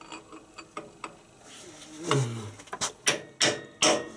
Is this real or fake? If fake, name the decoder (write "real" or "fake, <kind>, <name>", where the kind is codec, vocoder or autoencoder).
real